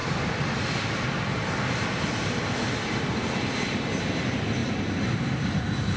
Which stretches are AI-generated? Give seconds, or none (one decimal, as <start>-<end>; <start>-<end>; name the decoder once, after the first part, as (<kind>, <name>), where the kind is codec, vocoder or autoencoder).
4.6-5.6 (vocoder, BigVGAN v2)